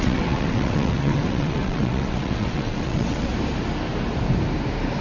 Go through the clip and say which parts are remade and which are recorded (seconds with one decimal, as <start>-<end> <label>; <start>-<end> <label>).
0.0-3.3 remade; 3.3-5.0 recorded